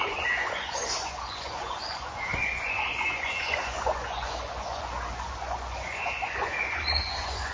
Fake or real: fake